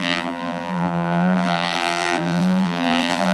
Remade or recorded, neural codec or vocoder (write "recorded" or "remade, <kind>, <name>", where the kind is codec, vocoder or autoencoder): remade, vocoder, BigVGAN v2